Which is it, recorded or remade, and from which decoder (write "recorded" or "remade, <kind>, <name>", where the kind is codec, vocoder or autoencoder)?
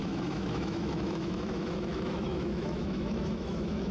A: remade, autoencoder, DAC-VAE